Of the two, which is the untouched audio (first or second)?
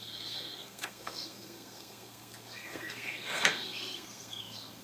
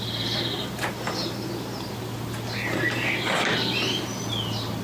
second